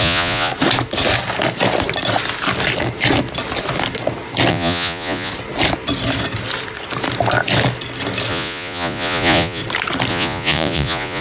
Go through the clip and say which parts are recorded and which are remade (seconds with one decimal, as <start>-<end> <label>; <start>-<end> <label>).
0.0-0.5 remade; 0.5-4.5 recorded; 4.5-5.3 remade; 5.3-8.3 recorded; 8.3-9.6 remade; 9.6-10.1 recorded; 10.1-11.2 remade